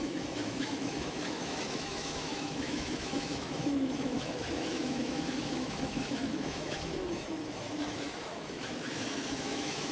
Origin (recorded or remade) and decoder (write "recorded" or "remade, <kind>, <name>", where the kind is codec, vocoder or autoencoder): remade, autoencoder, DAC-VAE